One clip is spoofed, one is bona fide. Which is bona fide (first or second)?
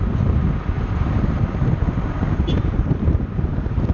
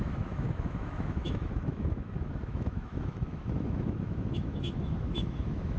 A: first